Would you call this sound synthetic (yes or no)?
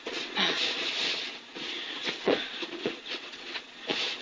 yes